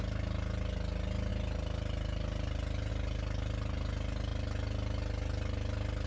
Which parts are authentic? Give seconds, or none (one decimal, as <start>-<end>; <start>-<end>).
0.0-6.1